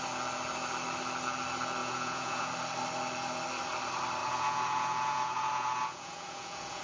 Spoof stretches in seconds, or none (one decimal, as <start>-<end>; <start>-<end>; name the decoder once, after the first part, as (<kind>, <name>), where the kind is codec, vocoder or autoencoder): 1.8-2.5 (vocoder, Vocos); 4.2-6.8